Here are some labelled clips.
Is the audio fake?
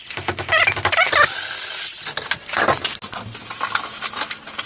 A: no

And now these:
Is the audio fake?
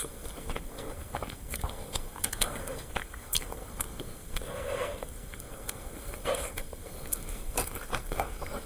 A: yes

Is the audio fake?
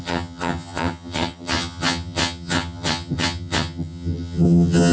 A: yes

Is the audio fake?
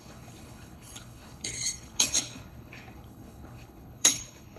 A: yes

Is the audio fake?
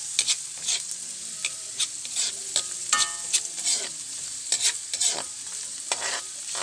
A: no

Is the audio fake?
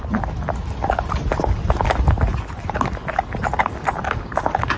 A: no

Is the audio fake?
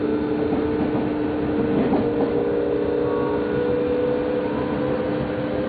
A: no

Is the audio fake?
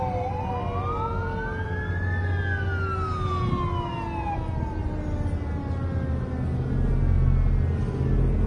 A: no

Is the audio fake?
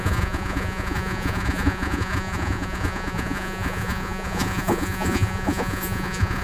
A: yes